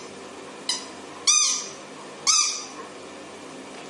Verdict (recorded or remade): recorded